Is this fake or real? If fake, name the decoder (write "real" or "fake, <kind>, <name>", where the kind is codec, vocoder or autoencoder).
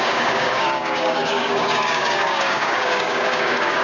fake, codec, DAC